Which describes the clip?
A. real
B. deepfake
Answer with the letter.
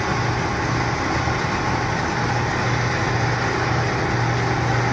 A